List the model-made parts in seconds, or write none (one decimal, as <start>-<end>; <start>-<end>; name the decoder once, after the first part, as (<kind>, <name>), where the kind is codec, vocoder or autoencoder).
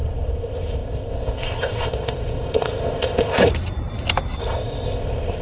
0.0-3.5 (codec, ZipCodec); 4.4-5.4